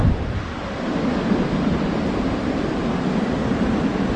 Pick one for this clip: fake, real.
fake